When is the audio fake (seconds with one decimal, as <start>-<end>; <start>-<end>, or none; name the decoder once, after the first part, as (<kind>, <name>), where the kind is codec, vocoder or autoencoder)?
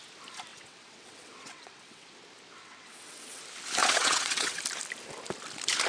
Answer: 0.5-2.1 (vocoder, WaveNeXt); 2.6-3.4; 3.8-4.6